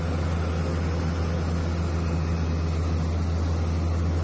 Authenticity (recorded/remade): recorded